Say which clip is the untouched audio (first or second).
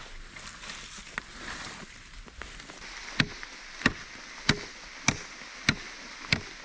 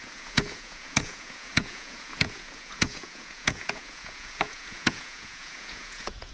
first